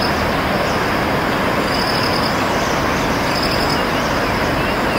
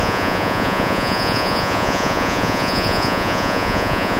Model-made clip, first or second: second